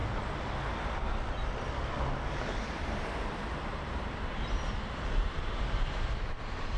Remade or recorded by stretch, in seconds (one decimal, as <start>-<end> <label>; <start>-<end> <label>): 0.0-2.6 recorded; 2.6-6.8 remade